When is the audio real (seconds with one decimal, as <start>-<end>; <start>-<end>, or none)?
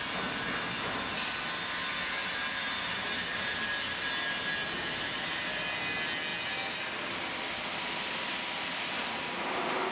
0.0-9.9